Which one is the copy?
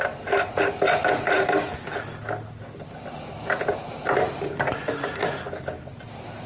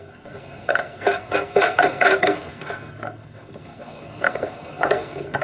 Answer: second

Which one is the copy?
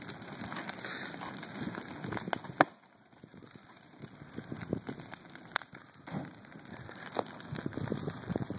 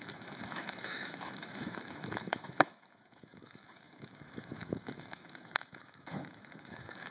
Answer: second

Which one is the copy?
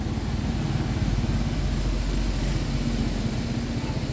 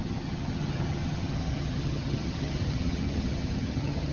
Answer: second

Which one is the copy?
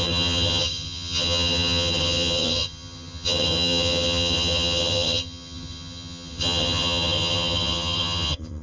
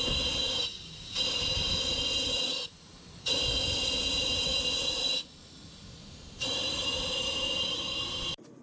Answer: first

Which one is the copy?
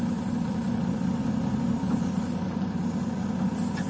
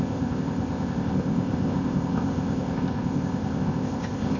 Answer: second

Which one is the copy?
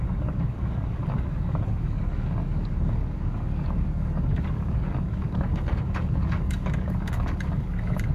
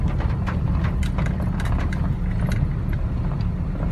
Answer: first